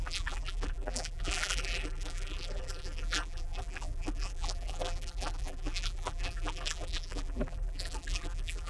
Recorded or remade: remade